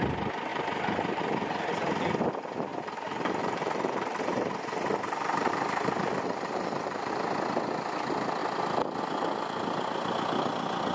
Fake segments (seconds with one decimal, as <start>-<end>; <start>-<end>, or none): 0.5-1.2; 2.7-7.1